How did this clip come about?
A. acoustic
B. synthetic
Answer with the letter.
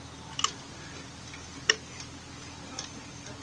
A